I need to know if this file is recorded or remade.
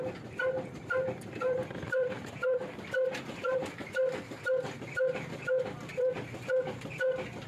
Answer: recorded